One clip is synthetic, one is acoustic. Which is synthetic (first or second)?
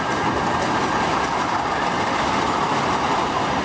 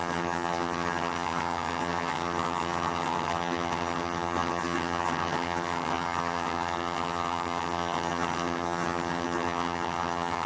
second